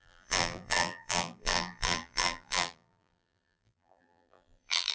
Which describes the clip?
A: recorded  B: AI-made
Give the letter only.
B